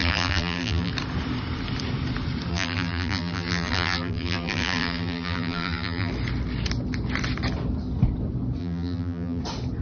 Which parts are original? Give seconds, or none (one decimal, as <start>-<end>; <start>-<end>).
0.9-2.5; 6.1-8.6; 9.4-9.8